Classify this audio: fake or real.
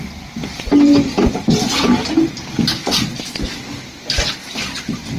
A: real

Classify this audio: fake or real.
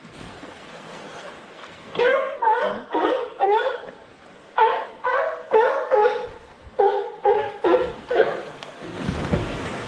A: fake